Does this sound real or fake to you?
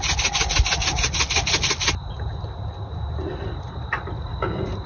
real